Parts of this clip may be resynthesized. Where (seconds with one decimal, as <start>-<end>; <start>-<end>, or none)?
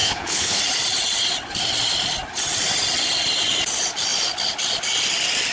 0.0-0.6